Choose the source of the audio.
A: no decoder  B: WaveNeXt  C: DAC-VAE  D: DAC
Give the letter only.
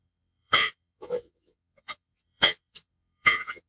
B